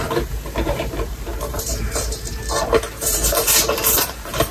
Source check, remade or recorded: remade